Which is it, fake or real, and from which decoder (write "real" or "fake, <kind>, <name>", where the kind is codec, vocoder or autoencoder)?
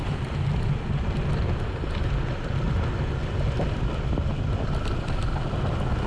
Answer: real